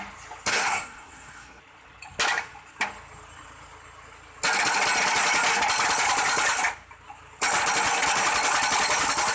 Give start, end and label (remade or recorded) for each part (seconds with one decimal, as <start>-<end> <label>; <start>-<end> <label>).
0.0-0.5 recorded; 0.5-1.6 remade; 1.6-9.3 recorded